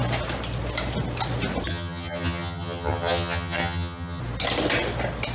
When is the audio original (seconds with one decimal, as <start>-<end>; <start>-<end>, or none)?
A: 0.0-1.7; 4.2-5.3